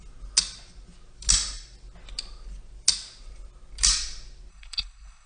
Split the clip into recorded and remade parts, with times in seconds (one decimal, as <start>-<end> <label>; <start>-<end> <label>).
0.0-4.5 recorded; 4.5-5.3 remade